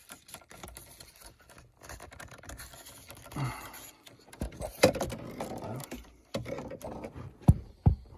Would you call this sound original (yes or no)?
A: yes